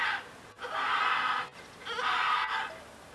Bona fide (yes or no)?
yes